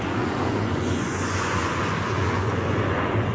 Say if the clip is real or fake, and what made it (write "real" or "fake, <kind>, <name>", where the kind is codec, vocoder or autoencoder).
fake, vocoder, Vocos